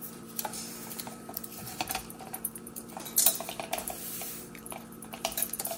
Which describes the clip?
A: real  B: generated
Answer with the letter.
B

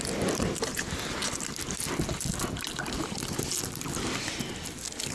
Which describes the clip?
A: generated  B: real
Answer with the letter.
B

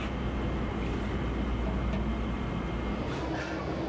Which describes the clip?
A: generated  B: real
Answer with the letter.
B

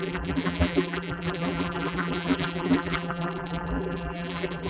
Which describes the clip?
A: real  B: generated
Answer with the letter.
B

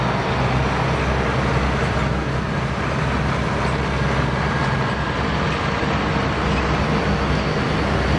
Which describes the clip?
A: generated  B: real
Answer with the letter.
B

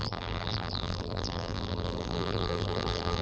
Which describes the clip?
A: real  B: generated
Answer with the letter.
B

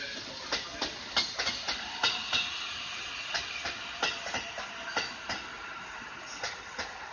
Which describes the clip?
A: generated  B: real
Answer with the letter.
B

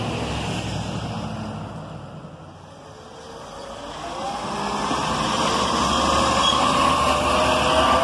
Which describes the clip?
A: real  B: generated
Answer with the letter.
A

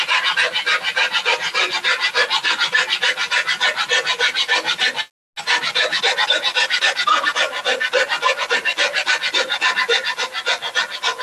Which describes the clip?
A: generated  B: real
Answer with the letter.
B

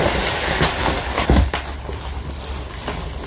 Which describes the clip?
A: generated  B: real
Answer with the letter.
B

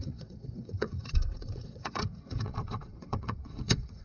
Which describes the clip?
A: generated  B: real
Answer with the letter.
A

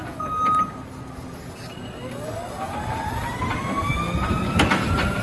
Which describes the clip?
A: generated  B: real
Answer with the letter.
B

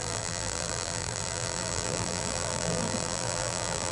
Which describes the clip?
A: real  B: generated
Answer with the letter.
B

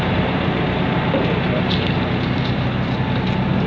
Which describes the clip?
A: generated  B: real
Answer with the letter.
B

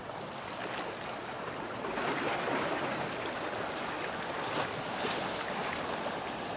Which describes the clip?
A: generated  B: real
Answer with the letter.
B